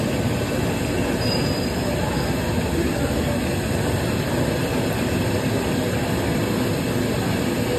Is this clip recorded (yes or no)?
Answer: yes